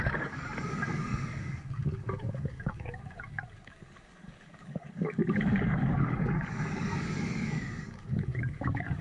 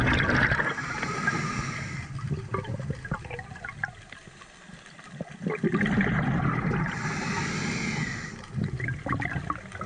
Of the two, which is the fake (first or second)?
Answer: first